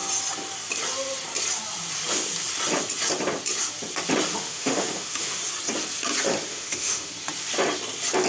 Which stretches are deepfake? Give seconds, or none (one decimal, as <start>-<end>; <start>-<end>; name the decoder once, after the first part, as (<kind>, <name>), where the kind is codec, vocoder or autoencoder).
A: 4.3-5.4 (autoencoder, DAC-VAE); 6.5-7.1